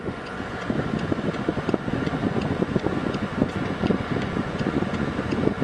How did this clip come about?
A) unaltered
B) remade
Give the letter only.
B